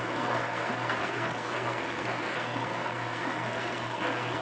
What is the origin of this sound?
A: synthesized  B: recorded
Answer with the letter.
A